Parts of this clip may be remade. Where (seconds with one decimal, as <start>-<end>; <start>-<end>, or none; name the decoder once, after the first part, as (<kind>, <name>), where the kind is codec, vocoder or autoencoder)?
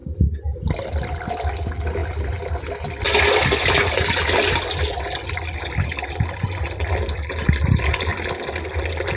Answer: none